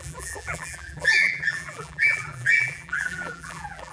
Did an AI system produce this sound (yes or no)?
yes